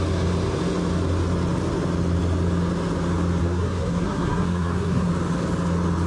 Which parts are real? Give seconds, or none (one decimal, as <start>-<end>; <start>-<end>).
0.0-3.4; 5.1-6.1

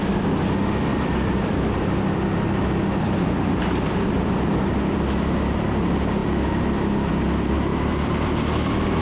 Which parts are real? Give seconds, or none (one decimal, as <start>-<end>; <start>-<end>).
0.0-0.9; 1.9-7.7; 8.3-9.0

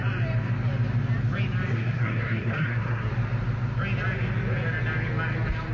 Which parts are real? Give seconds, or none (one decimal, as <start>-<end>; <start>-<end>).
0.0-1.7; 3.1-5.7

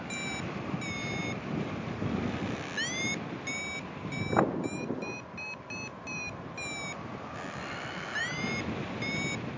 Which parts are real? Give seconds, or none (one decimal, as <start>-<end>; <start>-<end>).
0.0-9.6

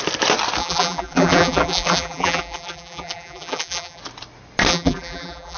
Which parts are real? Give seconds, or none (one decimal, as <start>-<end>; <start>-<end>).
0.0-0.6; 4.0-4.7

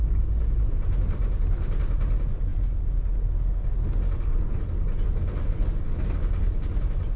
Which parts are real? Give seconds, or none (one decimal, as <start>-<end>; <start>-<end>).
0.0-7.2